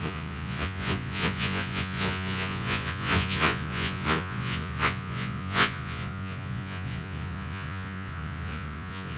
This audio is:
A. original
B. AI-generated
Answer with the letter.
B